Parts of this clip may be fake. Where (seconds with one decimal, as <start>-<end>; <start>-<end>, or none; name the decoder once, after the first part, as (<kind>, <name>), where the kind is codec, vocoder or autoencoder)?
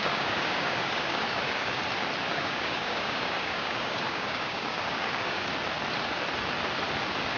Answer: 0.0-1.8 (codec, DAC); 2.3-5.5